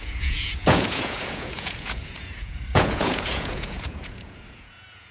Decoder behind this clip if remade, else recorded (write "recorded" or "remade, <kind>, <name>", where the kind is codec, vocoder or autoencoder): remade, vocoder, Vocos